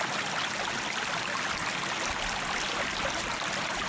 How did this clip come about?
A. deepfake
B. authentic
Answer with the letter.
B